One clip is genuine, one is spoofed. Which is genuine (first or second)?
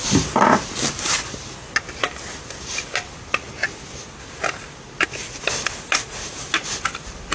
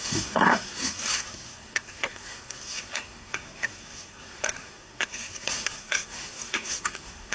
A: first